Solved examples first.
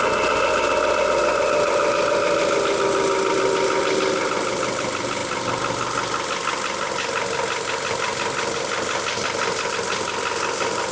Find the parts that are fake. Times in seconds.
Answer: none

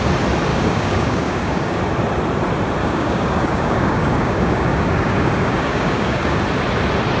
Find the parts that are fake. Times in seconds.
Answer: 0.5-1.8 (codec, DAC); 2.8-6.4

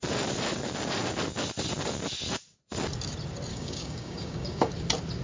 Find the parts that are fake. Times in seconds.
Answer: 3.5-4.7 (codec, DAC)

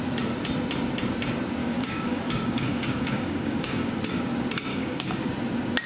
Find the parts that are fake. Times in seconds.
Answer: 1.6-3.9 (codec, DAC); 4.7-5.3

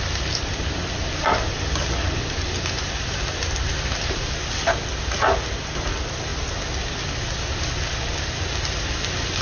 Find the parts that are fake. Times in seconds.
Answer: none

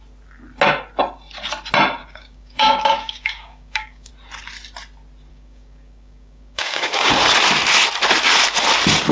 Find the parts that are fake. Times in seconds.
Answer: 2.0-4.1 (codec, DAC); 5.3-7.1

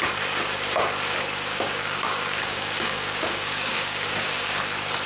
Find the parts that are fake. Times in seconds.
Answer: 1.5-4.6 (codec, DAC)

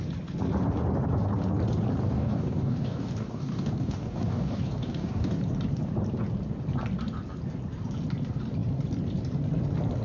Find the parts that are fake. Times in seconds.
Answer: 2.0-5.4 (codec, DAC)